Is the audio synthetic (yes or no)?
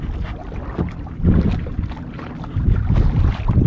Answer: no